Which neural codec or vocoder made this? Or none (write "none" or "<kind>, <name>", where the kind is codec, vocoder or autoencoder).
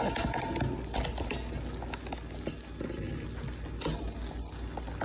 none